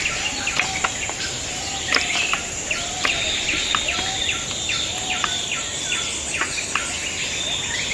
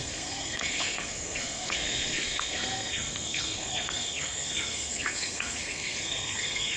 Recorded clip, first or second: first